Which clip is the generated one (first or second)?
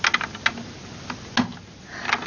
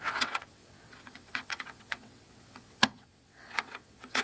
second